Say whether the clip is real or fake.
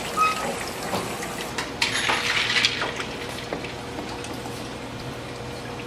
real